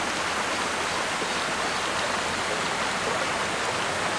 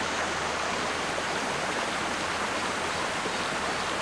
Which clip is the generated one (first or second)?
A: second